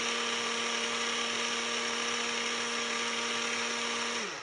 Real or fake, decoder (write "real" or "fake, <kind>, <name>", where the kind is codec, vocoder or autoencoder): real